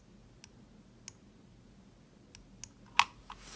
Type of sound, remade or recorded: recorded